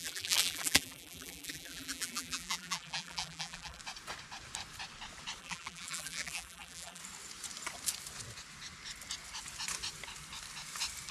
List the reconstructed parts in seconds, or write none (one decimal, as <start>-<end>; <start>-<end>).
0.0-3.8; 5.4-7.0